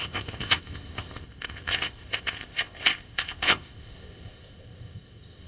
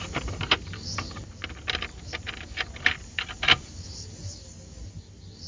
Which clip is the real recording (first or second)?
second